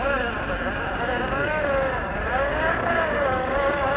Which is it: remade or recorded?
remade